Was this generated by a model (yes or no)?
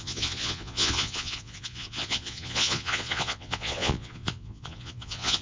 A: yes